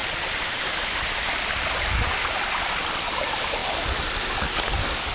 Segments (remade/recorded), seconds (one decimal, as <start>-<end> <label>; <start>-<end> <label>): 0.0-5.1 recorded